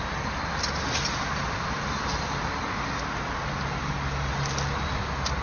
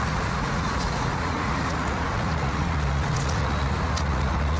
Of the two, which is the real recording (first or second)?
first